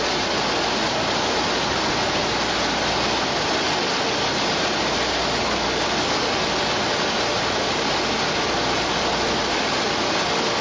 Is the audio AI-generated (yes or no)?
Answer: no